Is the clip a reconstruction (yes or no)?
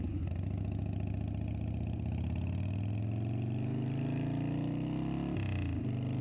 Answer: no